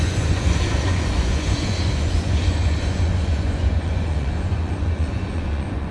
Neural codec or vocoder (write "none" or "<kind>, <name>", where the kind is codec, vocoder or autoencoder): vocoder, Vocos